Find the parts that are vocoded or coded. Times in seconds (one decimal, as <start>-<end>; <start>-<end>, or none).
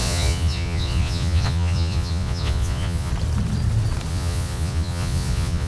0.0-3.1; 4.1-5.7